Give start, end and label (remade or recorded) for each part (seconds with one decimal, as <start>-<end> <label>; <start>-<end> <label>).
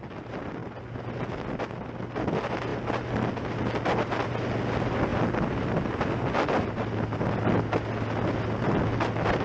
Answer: 0.0-9.4 recorded